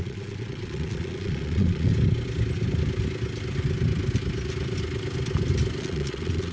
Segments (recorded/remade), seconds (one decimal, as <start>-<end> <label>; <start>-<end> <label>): 0.0-1.9 remade; 1.9-5.8 recorded; 5.8-6.5 remade